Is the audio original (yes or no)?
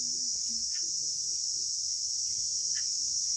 yes